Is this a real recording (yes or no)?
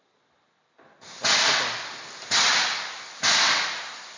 yes